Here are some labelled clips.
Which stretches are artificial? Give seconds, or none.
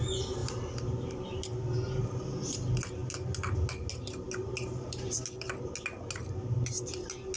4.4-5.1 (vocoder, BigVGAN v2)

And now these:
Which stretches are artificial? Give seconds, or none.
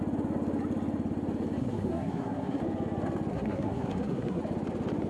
1.6-2.6 (codec, SNAC); 3.3-4.4